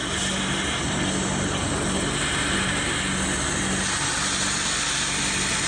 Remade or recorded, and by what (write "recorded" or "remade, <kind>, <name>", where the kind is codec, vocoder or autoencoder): recorded